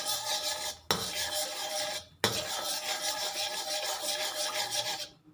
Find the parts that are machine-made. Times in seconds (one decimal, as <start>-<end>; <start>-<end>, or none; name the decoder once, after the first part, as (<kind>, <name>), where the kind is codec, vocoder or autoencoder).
none